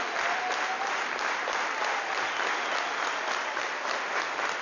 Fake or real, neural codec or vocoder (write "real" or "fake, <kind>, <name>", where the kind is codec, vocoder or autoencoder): real